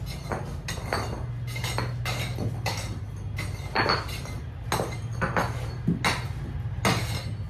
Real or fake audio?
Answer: real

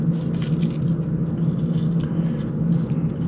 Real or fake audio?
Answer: real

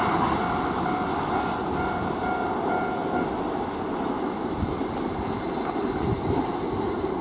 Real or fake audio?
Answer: real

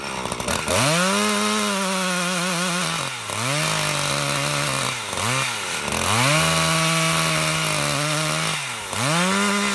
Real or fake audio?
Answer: real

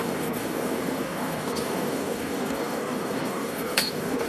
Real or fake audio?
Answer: fake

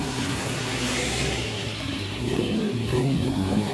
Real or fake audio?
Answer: fake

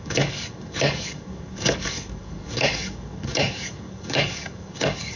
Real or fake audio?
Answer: fake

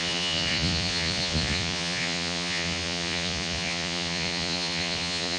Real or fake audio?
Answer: fake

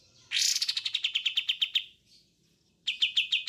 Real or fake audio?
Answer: real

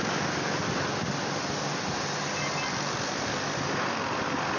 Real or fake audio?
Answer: real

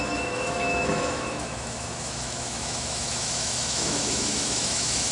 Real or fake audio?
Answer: fake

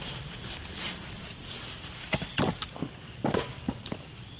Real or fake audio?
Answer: real